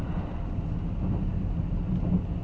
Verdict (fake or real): real